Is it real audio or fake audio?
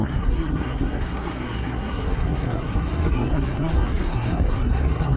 fake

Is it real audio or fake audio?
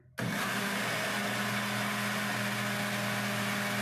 real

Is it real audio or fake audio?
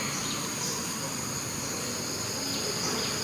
real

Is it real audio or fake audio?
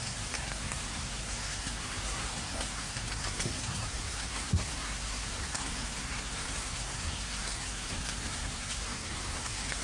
fake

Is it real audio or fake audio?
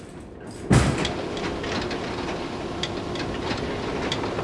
real